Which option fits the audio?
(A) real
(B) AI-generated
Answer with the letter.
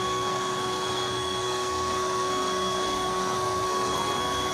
B